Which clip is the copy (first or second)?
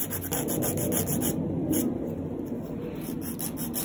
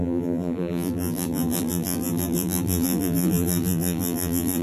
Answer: second